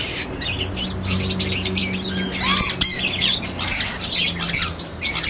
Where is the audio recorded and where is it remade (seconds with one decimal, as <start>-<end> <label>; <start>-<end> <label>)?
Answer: 0.0-5.3 recorded